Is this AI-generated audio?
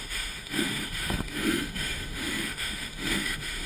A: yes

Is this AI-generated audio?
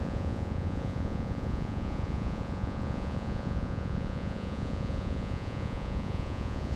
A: yes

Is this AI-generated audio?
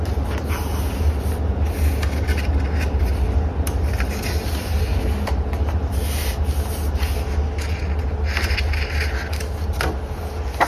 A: no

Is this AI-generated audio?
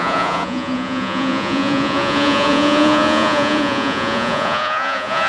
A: yes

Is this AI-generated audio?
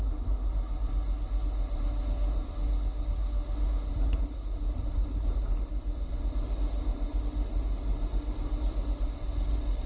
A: no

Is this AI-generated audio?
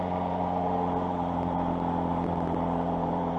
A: yes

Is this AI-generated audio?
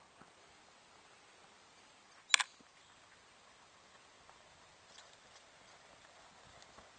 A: no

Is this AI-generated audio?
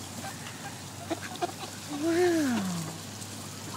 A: no